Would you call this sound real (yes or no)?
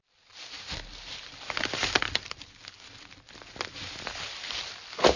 yes